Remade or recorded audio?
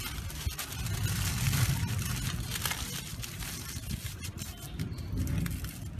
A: recorded